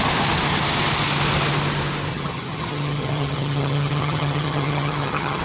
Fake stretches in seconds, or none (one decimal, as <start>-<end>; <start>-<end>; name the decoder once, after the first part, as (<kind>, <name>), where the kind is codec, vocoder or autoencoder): 2.1-5.4 (vocoder, HiFi-GAN)